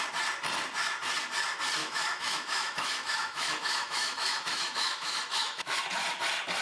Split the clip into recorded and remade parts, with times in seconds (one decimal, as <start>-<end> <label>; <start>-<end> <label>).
0.0-1.8 recorded; 1.8-5.8 remade; 5.8-6.6 recorded